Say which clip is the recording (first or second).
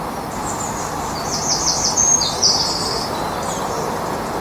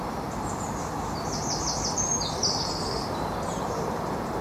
first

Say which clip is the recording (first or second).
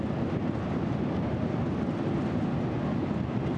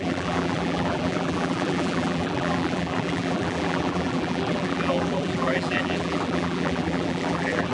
first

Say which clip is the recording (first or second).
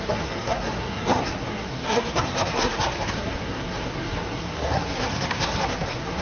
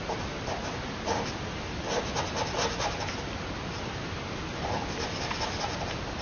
second